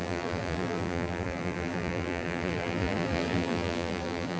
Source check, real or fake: fake